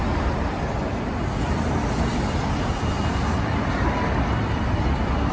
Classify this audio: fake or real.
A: real